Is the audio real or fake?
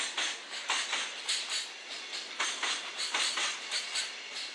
real